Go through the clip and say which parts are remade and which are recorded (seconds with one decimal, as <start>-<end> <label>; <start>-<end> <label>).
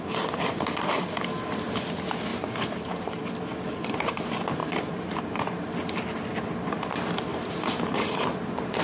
0.0-2.3 recorded; 2.3-3.3 remade; 3.3-4.6 recorded; 4.6-5.7 remade; 5.7-7.3 recorded; 7.3-8.8 remade